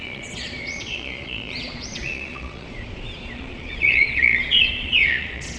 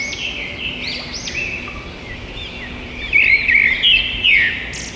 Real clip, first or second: second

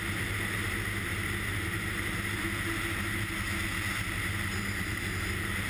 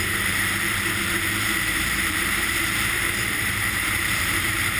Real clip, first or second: first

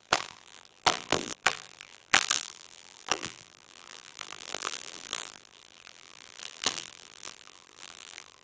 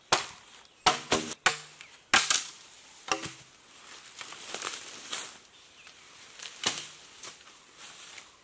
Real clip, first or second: second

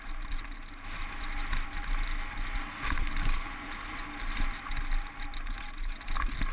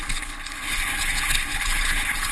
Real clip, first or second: first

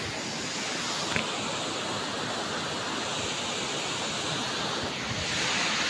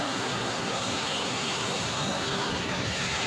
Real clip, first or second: first